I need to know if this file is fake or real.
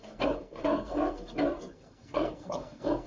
fake